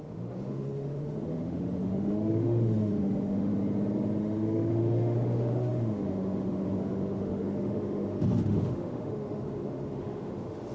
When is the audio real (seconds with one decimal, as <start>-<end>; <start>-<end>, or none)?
3.5-4.2